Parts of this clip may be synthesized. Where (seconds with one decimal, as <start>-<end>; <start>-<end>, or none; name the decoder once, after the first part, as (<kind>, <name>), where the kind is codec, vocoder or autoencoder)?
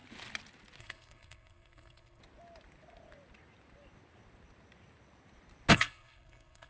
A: 0.8-2.2 (codec, SNAC); 5.7-6.7